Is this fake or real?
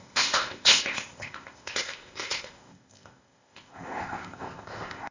fake